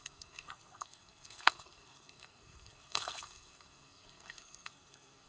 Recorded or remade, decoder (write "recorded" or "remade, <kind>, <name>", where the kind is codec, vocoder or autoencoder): remade, codec, SNAC